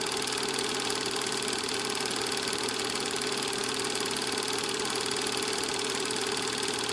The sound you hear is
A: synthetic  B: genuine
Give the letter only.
B